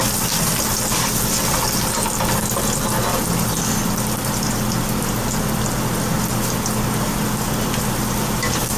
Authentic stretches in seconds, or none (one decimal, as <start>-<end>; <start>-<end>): 0.0-3.1; 4.7-8.8